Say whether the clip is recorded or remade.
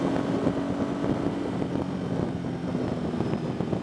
recorded